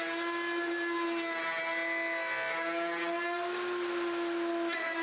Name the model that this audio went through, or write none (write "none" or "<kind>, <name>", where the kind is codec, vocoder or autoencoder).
none